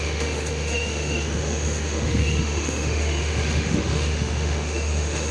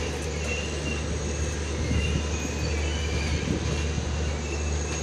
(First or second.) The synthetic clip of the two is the first